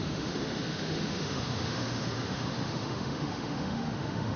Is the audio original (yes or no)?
no